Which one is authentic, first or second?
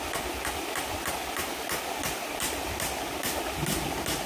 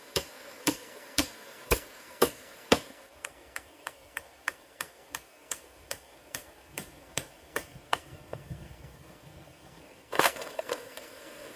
first